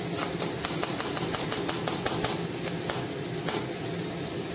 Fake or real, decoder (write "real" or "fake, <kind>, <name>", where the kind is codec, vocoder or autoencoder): real